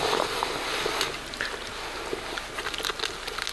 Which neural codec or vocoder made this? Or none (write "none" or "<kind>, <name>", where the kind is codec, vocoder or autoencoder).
none